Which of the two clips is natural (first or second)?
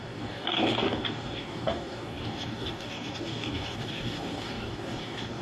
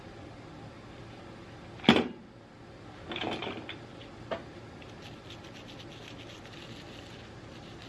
second